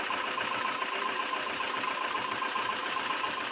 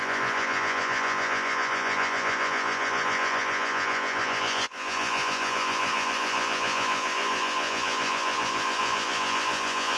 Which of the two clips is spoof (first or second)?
second